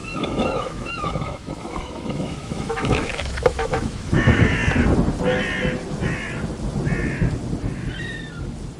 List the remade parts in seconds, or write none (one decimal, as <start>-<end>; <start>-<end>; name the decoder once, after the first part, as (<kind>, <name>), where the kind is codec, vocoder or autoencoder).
0.0-4.6 (autoencoder, DAC-VAE)